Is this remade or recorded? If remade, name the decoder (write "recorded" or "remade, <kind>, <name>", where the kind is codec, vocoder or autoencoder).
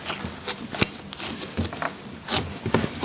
recorded